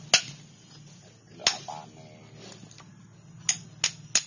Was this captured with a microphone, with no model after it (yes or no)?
yes